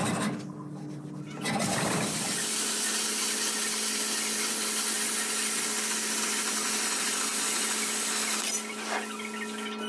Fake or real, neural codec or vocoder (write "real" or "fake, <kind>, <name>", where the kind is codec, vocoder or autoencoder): real